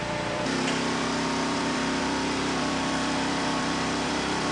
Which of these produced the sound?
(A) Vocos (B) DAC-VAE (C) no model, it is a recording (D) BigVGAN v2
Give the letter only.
D